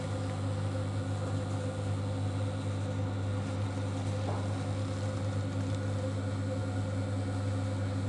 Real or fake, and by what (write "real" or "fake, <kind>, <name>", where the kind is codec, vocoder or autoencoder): real